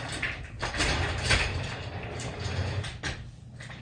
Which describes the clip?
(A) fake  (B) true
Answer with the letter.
B